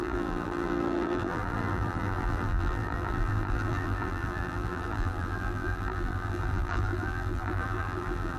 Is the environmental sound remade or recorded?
remade